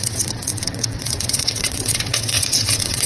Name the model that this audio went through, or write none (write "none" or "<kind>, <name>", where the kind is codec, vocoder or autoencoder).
vocoder, WaveNeXt